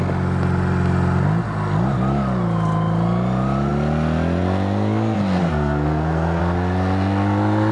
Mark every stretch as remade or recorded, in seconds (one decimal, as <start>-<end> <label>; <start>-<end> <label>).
0.0-5.4 recorded; 5.4-6.4 remade; 6.4-7.7 recorded